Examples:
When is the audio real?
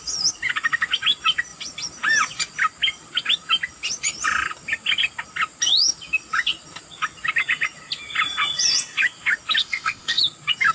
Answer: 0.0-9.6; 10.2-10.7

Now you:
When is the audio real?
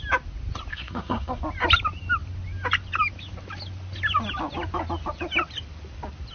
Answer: 0.0-0.7; 1.4-6.3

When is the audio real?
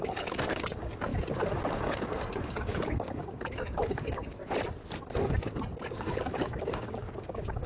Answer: 1.1-1.7; 4.4-6.0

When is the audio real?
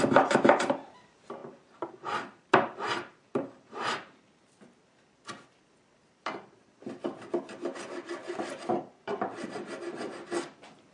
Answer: 0.0-1.4; 4.2-10.9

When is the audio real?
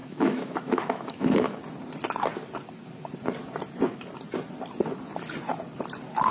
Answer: 1.6-6.3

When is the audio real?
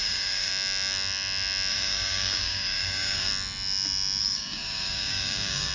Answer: 0.5-1.7; 3.3-4.2